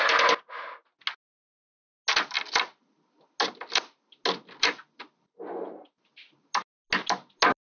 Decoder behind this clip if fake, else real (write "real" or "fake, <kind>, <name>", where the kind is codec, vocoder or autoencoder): real